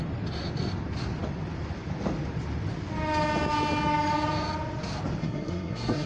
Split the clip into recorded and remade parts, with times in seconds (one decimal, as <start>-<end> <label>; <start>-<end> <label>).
0.0-5.2 recorded; 5.2-6.1 remade